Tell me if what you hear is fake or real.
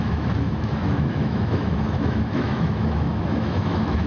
fake